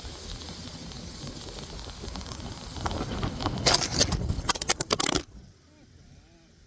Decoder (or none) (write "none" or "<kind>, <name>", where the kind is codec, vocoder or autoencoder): none